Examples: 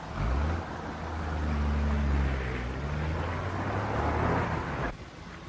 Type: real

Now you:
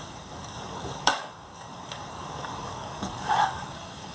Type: fake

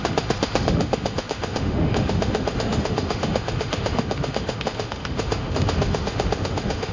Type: fake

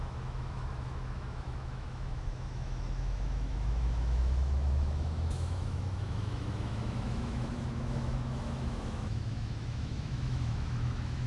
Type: fake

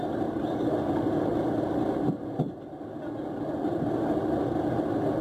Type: real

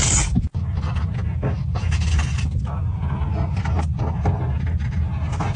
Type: real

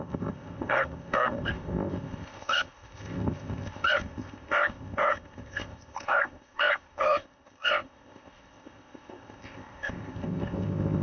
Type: fake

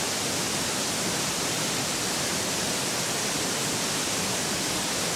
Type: fake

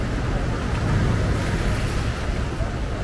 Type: real